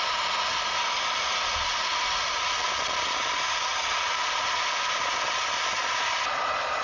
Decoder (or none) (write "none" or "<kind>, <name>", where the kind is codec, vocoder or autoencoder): none